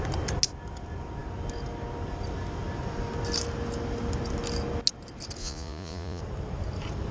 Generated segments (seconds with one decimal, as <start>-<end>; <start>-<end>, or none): 5.4-6.2